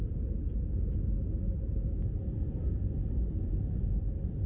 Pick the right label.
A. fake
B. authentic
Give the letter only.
B